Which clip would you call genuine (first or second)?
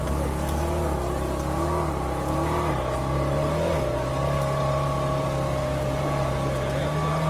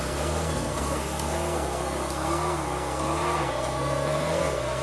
first